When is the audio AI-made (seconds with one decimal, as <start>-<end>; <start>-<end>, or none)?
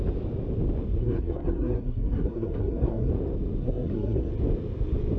1.0-3.1; 3.6-4.3